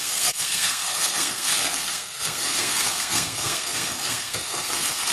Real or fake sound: fake